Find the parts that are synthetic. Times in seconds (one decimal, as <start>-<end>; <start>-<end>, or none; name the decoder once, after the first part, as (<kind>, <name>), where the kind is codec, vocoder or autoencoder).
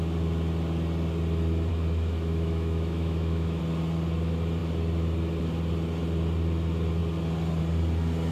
1.7-3.6 (autoencoder, DAC-VAE)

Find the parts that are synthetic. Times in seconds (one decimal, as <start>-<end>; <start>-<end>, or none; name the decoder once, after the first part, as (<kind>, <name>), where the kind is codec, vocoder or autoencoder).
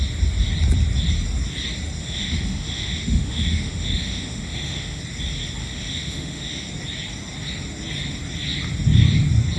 2.0-5.0 (autoencoder, DAC-VAE); 5.6-6.7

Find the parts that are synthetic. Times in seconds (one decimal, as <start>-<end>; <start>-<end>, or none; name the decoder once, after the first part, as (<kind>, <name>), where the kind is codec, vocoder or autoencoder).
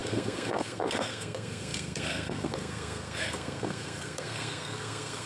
0.0-5.3 (codec, SNAC)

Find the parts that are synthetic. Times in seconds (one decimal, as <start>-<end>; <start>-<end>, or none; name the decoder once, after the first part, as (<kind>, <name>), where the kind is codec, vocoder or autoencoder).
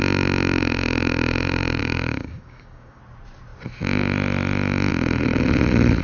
1.8-3.0 (codec, DAC)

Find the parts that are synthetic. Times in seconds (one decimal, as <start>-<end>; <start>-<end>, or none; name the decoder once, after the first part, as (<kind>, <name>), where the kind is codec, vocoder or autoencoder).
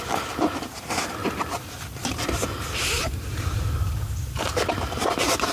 1.2-4.5 (vocoder, BigVGAN v2)